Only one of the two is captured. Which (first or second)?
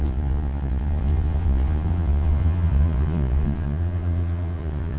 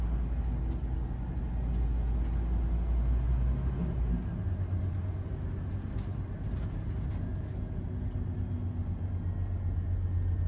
second